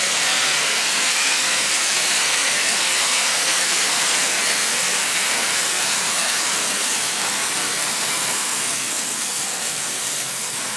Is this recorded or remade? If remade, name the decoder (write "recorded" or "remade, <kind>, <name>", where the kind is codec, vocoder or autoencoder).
remade, codec, SNAC